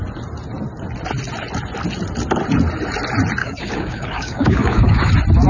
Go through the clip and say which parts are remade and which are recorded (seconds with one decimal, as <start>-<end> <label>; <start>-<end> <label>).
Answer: 0.0-3.4 recorded; 3.4-5.1 remade; 5.1-5.5 recorded